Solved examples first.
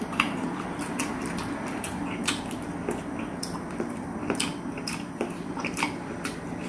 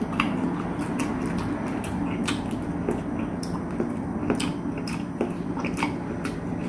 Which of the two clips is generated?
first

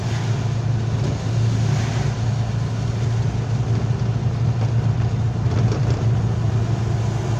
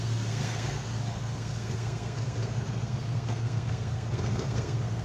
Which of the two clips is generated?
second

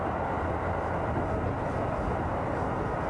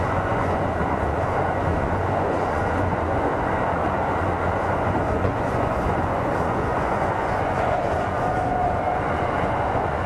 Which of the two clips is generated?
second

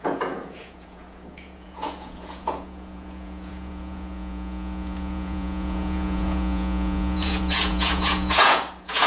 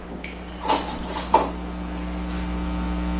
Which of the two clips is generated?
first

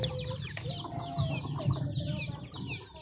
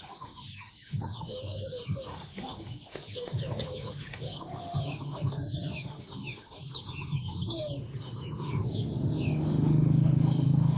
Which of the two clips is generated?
second